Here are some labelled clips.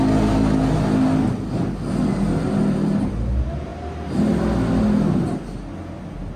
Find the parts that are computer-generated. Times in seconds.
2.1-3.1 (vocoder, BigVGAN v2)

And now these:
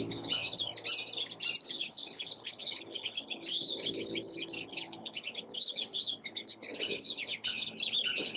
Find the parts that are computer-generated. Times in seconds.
0.0-0.7 (codec, HILCodec); 1.6-8.4

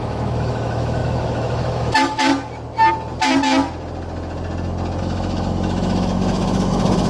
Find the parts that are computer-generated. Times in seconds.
0.0-2.3 (autoencoder, DAC-VAE); 5.0-7.1

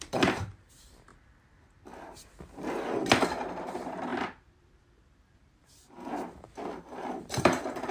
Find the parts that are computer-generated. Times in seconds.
0.0-1.1 (vocoder, BigVGAN v2); 3.6-7.9

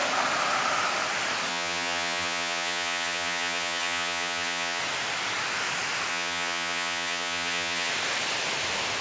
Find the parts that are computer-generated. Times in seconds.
1.5-4.8 (vocoder, HiFi-GAN); 6.1-7.9